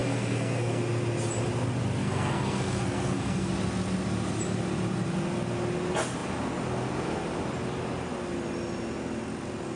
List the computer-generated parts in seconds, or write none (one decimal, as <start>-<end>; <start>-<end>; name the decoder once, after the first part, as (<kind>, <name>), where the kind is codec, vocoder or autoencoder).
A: 0.0-0.8 (codec, SNAC); 2.0-3.5